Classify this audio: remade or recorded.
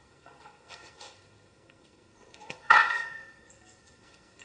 remade